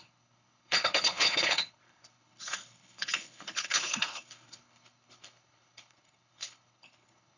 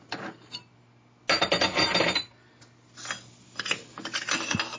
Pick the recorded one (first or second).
second